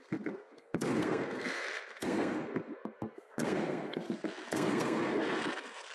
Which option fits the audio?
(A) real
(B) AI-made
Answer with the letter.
B